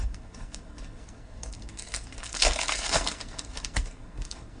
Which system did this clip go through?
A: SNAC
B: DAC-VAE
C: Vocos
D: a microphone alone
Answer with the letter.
A